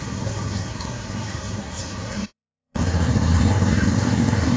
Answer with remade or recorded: remade